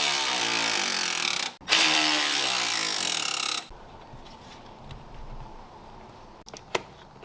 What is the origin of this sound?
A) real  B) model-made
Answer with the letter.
A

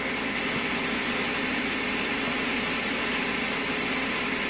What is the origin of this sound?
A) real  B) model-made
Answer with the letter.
A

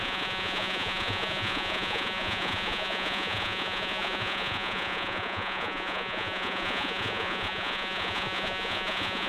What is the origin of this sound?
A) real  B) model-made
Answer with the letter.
B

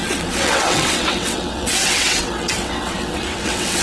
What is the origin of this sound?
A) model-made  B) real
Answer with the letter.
A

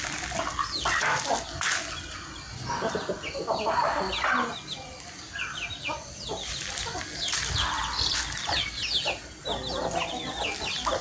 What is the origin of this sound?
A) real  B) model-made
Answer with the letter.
A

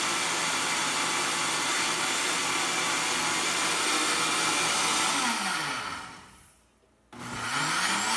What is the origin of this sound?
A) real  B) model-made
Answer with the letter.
A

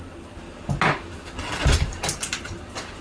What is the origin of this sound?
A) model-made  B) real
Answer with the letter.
B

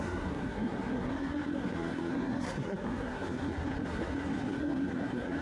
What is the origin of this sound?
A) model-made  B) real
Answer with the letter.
A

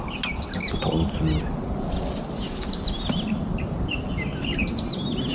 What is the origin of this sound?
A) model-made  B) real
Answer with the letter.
B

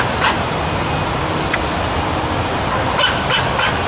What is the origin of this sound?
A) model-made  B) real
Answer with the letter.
B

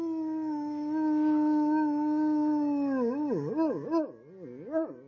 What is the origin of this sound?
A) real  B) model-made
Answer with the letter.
A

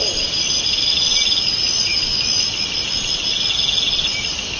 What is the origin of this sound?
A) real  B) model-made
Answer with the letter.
A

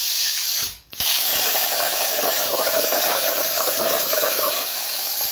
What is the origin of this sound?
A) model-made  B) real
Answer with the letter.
A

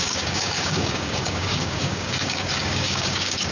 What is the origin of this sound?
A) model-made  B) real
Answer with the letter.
A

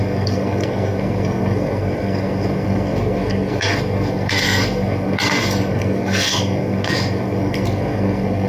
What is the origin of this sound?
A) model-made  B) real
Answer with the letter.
A